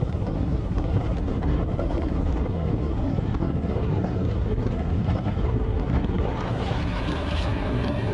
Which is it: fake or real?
fake